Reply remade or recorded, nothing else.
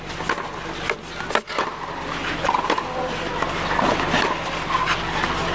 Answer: recorded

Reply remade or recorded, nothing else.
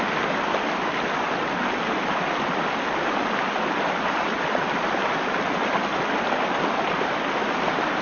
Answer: recorded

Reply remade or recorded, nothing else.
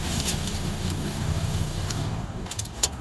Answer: remade